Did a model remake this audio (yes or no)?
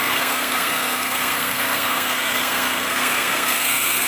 yes